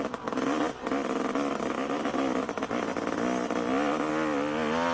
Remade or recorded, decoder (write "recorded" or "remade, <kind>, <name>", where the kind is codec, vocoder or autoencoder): recorded